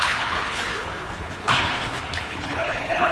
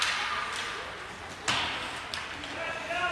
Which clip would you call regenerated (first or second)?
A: first